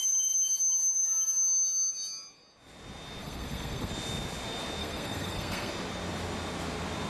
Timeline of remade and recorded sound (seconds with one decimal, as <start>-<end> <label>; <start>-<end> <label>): 0.0-3.2 recorded; 3.2-3.9 remade; 3.9-4.8 recorded; 4.8-5.7 remade; 5.7-7.1 recorded